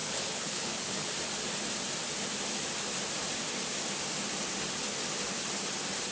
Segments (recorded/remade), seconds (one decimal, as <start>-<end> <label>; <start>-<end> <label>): 0.0-1.1 remade; 1.1-6.1 recorded